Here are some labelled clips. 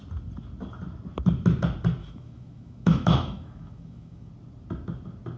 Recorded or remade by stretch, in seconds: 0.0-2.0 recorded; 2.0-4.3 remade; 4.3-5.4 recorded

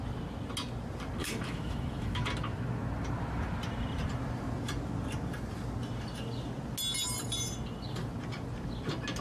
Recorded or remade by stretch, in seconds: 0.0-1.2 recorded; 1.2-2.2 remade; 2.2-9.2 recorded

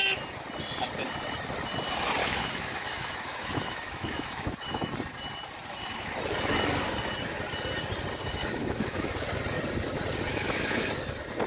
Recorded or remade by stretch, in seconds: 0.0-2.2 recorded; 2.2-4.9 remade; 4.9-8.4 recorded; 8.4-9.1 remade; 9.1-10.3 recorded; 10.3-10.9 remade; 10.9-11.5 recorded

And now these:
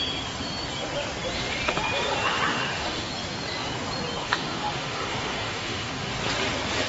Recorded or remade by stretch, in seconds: 0.0-2.5 recorded; 2.5-3.1 remade; 3.1-4.2 recorded; 4.2-6.1 remade; 6.1-6.9 recorded

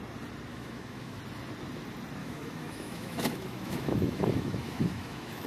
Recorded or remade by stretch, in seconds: 0.0-0.5 recorded; 0.5-1.2 remade; 1.2-2.2 recorded; 2.2-5.5 remade